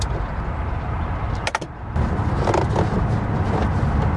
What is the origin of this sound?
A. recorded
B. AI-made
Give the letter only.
A